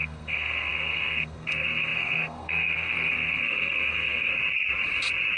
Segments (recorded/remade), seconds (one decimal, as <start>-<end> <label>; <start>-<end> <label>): 0.0-4.3 remade; 4.3-5.4 recorded